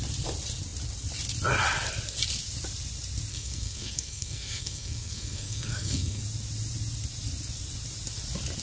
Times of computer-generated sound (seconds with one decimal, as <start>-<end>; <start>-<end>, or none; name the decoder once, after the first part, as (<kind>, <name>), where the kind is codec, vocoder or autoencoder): 3.3-6.2 (codec, SNAC)

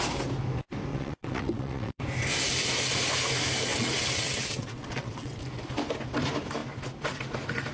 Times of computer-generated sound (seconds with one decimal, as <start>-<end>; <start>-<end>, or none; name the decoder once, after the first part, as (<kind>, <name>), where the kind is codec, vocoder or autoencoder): 0.9-2.0 (vocoder, WaveNeXt); 3.7-5.4

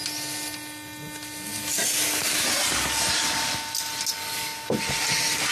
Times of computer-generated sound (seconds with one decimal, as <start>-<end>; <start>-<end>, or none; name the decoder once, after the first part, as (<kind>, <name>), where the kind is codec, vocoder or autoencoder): none

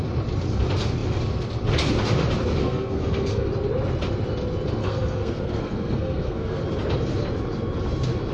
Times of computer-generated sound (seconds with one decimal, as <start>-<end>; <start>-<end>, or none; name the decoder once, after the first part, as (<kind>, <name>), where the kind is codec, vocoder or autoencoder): 2.6-3.5 (codec, SNAC); 4.8-6.6